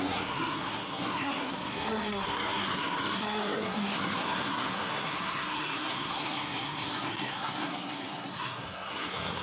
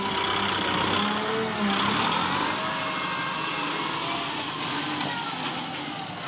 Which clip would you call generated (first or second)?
first